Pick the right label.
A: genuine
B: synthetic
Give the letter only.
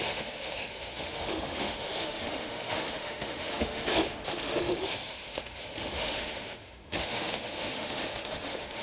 B